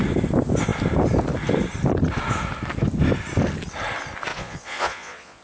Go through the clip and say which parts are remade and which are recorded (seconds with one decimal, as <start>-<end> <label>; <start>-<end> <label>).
0.0-4.3 recorded; 4.3-5.4 remade